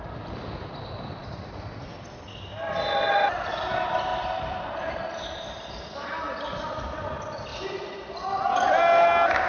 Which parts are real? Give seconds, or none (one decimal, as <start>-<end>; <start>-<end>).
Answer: 0.0-1.2; 1.8-4.1; 5.9-7.5; 8.8-9.5